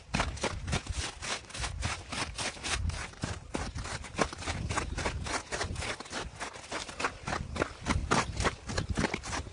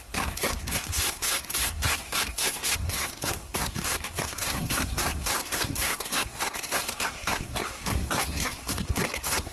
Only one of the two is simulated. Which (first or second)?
second